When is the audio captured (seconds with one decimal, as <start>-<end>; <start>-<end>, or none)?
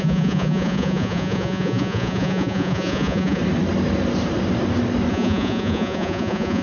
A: 3.4-5.1